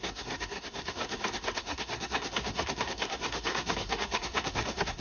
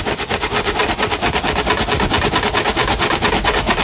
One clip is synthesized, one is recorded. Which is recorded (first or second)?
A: second